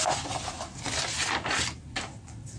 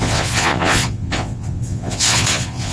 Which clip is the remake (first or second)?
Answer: second